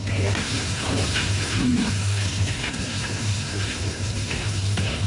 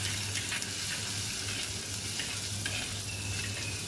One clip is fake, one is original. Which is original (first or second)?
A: second